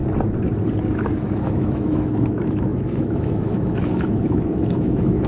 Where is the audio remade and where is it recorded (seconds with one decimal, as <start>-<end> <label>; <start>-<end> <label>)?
0.0-1.1 recorded; 1.1-5.3 remade